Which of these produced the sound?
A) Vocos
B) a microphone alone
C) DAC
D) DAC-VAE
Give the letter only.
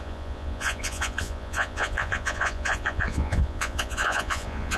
A